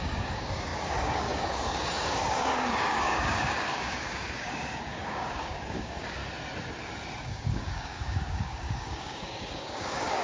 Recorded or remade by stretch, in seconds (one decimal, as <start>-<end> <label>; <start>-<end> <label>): 0.0-6.2 remade; 6.2-7.2 recorded; 7.2-10.2 remade